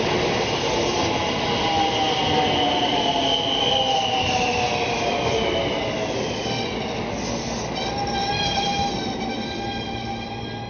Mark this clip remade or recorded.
recorded